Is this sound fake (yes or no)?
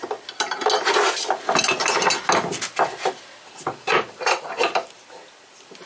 no